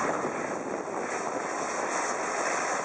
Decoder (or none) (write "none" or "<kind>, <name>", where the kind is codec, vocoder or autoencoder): none